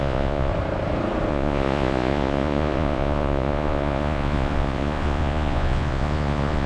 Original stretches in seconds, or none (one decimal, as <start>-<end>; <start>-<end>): 0.5-1.3